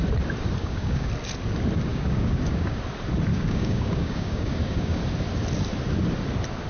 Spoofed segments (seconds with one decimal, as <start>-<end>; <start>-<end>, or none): 0.6-1.1; 1.9-2.8; 3.3-5.0

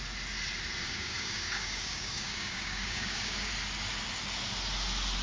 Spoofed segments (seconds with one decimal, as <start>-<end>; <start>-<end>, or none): 0.8-3.5

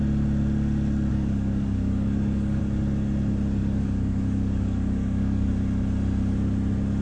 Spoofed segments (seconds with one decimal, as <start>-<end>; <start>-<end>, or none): 1.1-2.6; 3.6-5.5